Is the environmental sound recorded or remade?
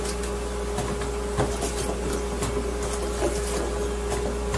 recorded